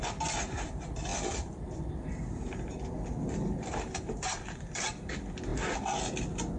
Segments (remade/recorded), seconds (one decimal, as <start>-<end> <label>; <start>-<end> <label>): 0.0-6.6 recorded